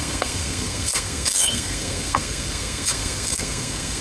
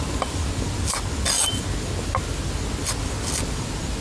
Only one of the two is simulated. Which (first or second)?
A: first